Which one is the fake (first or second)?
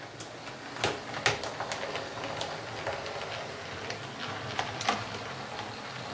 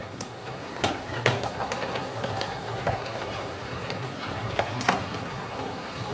second